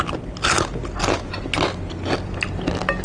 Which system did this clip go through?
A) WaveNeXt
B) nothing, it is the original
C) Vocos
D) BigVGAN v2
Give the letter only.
B